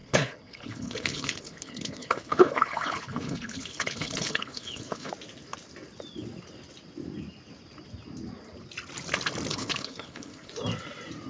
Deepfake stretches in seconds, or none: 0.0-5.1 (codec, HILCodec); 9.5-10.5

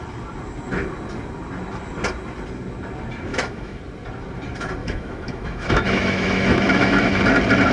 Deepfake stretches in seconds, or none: 3.3-3.8 (autoencoder, DAC-VAE); 4.8-7.2

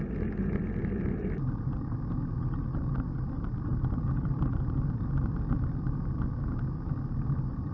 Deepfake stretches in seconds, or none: none

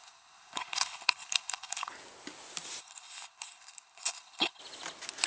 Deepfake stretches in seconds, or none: 0.0-1.9 (codec, HILCodec); 2.8-4.6

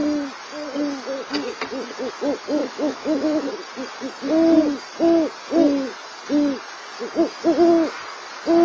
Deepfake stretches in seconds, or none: 2.6-3.5 (autoencoder, DAC-VAE)